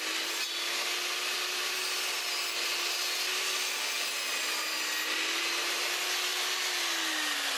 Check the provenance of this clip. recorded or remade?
recorded